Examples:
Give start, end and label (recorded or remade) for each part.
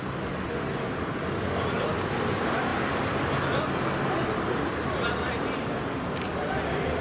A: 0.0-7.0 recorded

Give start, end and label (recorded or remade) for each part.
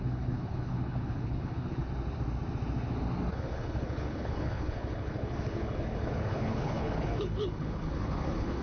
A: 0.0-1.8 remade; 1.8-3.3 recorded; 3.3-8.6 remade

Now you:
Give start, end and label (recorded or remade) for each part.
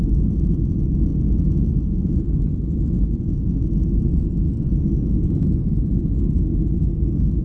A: 0.0-7.4 recorded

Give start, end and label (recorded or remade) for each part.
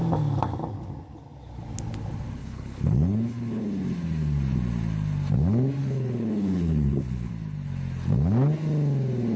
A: 0.0-2.4 recorded; 2.4-3.6 remade; 3.6-5.8 recorded; 5.8-7.3 remade; 7.3-9.4 recorded